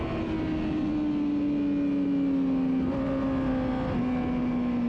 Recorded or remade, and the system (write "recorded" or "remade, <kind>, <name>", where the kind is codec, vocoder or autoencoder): recorded